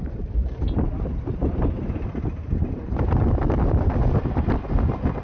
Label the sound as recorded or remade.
recorded